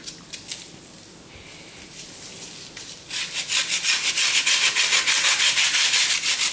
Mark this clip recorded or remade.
recorded